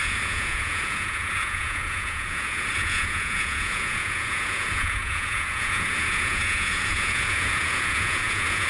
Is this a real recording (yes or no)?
no